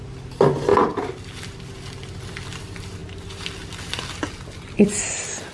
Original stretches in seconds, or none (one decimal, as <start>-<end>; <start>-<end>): 0.0-5.5